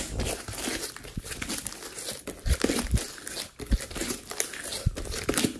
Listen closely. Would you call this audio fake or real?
real